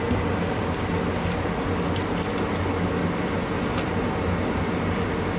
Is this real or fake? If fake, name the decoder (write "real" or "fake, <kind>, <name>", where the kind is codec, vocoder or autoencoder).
real